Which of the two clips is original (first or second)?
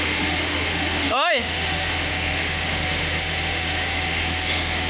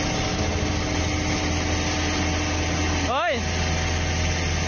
second